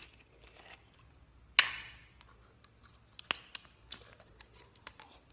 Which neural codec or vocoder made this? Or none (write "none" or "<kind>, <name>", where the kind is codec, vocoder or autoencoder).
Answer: none